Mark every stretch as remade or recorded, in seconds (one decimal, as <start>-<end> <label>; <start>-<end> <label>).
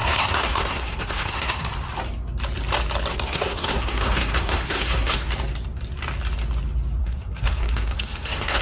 0.0-1.7 remade; 1.7-3.1 recorded; 3.1-5.3 remade; 5.3-7.0 recorded; 7.0-8.6 remade